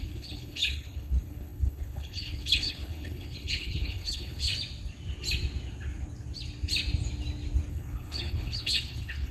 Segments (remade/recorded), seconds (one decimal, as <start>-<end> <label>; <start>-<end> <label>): 0.0-4.5 remade; 4.5-7.7 recorded; 7.7-9.3 remade